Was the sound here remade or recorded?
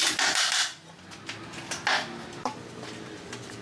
recorded